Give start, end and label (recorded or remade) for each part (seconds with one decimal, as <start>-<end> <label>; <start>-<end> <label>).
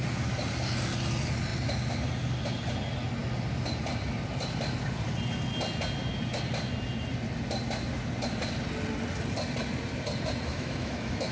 0.0-10.5 recorded; 10.5-11.3 remade